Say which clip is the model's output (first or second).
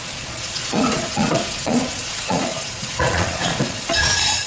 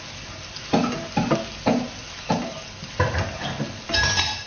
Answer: first